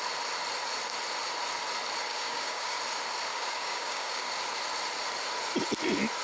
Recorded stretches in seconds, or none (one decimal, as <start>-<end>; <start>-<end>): 0.0-2.1; 2.8-3.3; 4.3-6.2